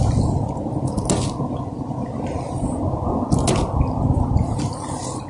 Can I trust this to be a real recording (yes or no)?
yes